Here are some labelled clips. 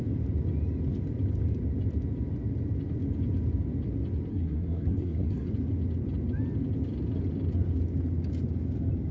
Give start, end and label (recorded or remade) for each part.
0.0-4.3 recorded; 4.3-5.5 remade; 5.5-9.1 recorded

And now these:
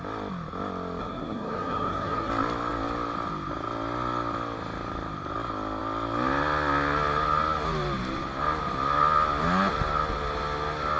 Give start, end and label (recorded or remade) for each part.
0.0-1.0 recorded; 1.0-2.3 remade; 2.3-11.0 recorded